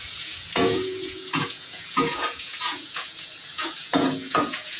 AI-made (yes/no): yes